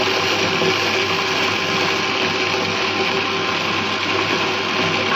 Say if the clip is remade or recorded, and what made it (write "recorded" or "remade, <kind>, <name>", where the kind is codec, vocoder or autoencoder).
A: recorded